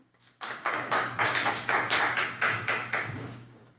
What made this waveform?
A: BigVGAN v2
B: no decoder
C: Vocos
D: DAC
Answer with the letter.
D